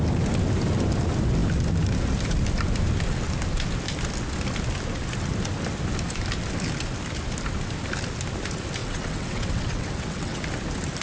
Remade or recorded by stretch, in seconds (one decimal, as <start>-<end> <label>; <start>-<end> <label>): 0.0-8.8 recorded; 8.8-10.4 remade; 10.4-11.0 recorded